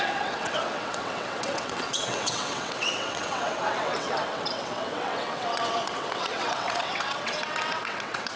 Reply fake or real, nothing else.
fake